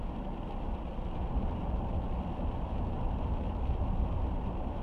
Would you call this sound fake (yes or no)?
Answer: no